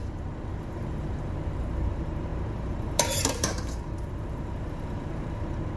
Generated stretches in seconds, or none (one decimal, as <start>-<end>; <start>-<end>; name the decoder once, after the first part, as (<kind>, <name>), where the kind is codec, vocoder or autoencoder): 0.6-5.8 (vocoder, BigVGAN v2)

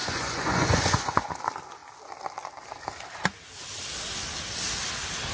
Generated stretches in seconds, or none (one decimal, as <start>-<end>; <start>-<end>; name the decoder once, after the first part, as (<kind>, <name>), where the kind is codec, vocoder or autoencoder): 0.0-1.3 (vocoder, Vocos)

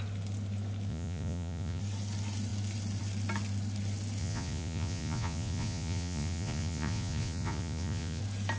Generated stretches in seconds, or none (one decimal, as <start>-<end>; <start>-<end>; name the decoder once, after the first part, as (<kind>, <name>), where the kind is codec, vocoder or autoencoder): 0.9-1.8 (vocoder, Vocos); 4.2-8.2

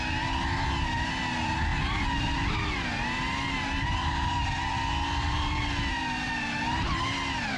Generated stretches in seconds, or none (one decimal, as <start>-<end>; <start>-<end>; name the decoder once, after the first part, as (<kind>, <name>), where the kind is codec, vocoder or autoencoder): none

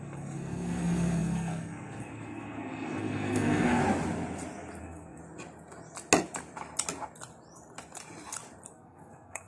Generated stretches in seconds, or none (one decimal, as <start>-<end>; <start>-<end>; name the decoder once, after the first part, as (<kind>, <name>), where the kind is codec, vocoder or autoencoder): 0.0-3.8 (codec, SNAC); 4.8-5.2; 8.7-9.5

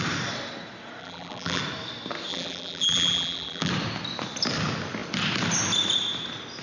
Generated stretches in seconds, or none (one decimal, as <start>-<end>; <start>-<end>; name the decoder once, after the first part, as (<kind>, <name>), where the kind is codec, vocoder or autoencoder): 1.0-1.6 (vocoder, BigVGAN v2); 2.3-3.7

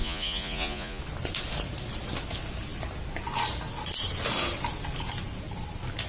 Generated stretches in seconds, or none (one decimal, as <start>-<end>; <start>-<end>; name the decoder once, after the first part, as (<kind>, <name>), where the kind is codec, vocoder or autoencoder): 0.0-1.0 (vocoder, Vocos)